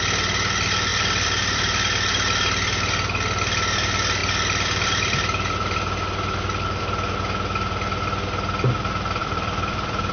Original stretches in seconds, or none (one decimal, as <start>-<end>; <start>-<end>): 0.0-0.9; 2.1-4.2; 6.8-9.2